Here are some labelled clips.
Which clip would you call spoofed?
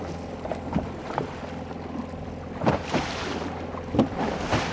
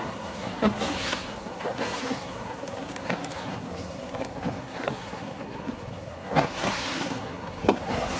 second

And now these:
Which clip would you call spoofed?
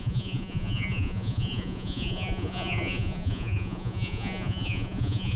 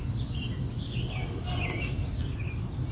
first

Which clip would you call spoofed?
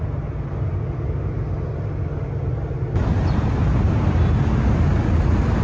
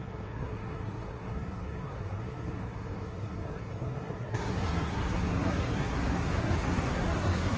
second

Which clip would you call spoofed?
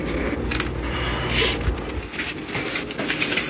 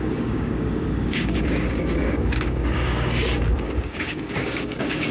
second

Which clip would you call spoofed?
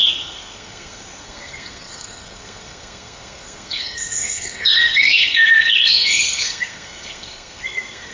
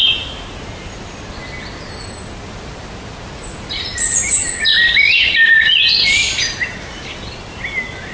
first